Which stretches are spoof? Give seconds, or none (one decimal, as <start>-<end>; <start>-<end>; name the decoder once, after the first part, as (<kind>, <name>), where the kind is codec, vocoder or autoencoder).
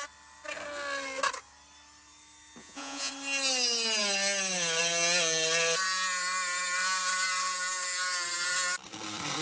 2.6-3.1 (vocoder, Vocos)